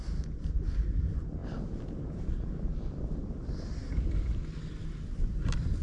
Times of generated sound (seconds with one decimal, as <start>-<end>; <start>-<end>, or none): none